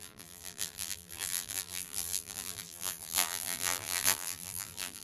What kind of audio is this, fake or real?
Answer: fake